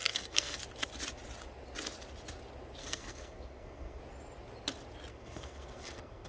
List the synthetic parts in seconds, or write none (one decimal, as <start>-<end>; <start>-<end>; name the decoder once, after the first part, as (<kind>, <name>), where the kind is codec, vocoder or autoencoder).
0.0-0.6 (codec, SNAC); 2.8-4.0; 5.1-6.3